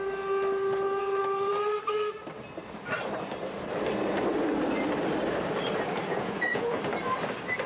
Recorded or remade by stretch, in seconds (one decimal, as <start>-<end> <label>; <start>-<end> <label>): 0.0-6.1 recorded; 6.1-6.8 remade; 6.8-7.7 recorded